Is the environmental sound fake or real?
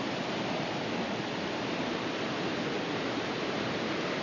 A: real